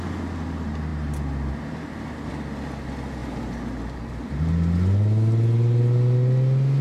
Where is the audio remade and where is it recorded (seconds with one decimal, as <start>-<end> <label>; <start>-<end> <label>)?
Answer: 0.0-3.2 recorded; 3.2-4.5 remade; 4.5-6.8 recorded